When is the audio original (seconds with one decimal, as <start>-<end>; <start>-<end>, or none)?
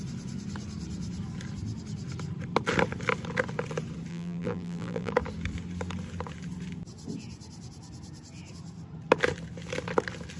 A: 0.0-4.1; 5.1-10.4